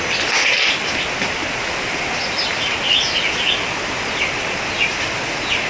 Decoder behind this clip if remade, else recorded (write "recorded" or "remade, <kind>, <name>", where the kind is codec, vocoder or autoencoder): recorded